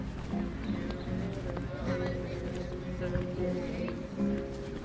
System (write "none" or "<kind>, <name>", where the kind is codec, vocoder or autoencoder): none